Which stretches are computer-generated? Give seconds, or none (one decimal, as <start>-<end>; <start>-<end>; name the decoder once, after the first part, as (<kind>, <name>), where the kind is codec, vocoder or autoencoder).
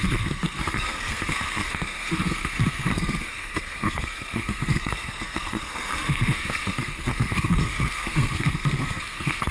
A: 0.0-9.5 (codec, SNAC)